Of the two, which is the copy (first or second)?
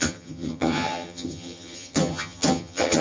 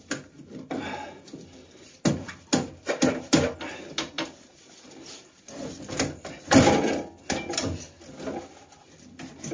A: first